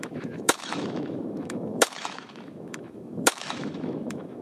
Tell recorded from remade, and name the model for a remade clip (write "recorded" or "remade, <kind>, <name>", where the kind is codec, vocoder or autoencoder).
remade, autoencoder, DAC-VAE